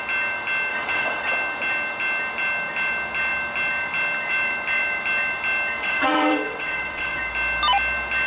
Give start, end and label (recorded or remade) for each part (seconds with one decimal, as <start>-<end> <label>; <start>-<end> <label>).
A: 0.0-0.7 recorded; 0.7-1.3 remade; 1.3-5.8 recorded; 5.8-7.2 remade; 7.2-8.3 recorded